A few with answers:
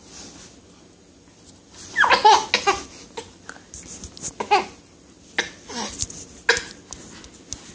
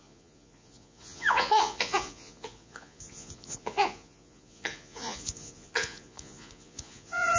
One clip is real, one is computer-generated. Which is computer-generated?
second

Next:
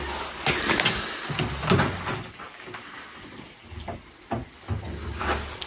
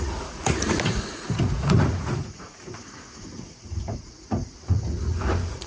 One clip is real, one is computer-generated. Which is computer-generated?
second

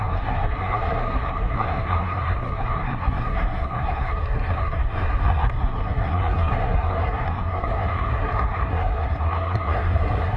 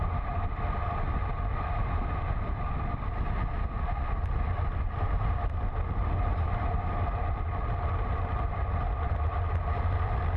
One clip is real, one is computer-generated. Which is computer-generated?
first